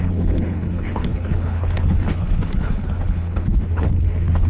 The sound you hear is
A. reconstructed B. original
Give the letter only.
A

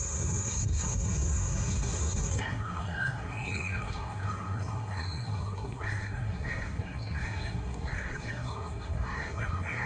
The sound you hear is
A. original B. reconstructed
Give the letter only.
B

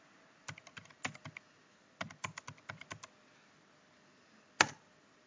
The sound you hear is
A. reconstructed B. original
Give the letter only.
B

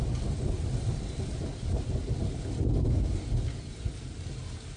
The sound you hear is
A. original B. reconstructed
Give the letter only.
A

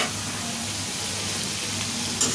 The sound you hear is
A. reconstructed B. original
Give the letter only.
B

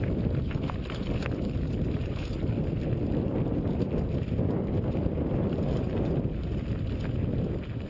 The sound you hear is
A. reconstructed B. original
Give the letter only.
B